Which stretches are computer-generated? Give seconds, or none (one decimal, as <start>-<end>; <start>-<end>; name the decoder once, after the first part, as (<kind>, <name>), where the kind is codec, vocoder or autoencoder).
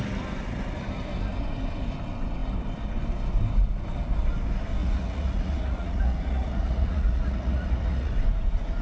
4.8-8.1 (vocoder, Vocos)